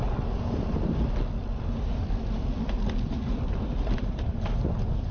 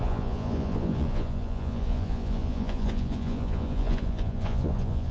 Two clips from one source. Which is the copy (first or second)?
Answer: second